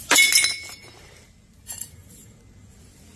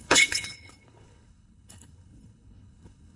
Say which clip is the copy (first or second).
second